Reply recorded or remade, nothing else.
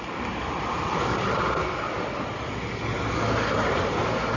recorded